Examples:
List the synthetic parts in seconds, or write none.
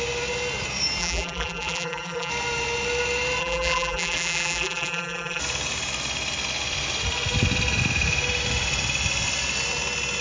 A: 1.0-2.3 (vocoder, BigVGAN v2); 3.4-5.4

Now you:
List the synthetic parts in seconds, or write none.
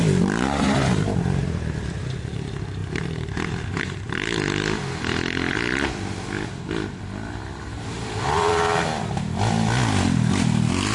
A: 7.7-8.5 (vocoder, BigVGAN v2)